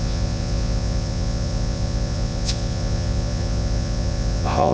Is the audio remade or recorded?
remade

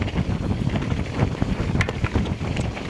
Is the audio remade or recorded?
recorded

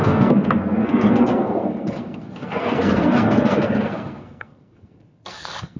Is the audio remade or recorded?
remade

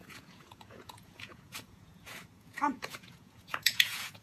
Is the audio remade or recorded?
remade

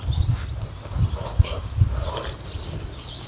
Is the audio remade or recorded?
recorded